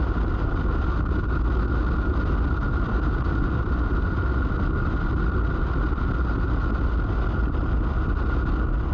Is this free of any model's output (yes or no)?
yes